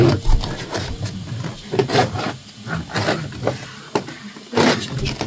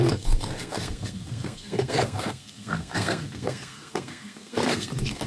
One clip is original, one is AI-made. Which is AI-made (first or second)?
second